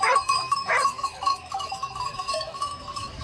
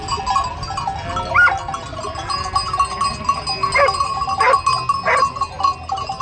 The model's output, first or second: first